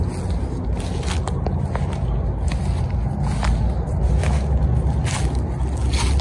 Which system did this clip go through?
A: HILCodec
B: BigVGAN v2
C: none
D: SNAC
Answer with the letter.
C